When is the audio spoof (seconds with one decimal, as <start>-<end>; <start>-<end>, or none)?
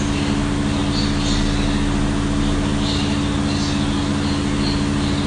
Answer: none